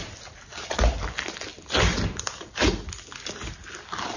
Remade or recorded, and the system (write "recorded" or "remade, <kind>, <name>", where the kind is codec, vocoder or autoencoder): recorded